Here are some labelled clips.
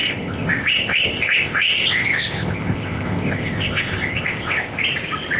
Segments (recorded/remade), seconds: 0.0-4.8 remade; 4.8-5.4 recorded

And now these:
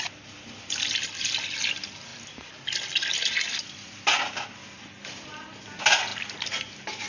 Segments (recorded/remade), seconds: 0.0-7.1 recorded

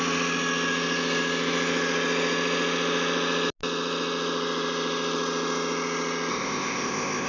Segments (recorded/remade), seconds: 0.0-6.3 recorded; 6.3-7.3 remade

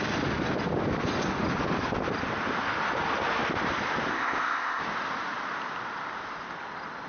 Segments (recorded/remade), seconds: 0.0-4.1 recorded; 4.1-4.8 remade; 4.8-7.1 recorded

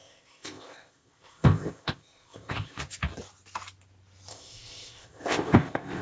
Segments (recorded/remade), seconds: 0.0-2.8 remade; 2.8-4.3 recorded; 4.3-6.0 remade

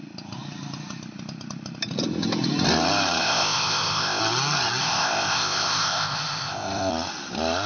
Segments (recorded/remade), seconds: 0.0-3.2 recorded; 3.2-4.2 remade; 4.2-4.8 recorded; 4.8-6.9 remade; 6.9-7.7 recorded

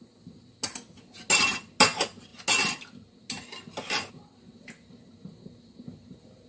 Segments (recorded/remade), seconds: 0.0-6.5 recorded

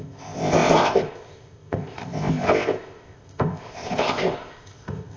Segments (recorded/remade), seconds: 0.0-5.2 remade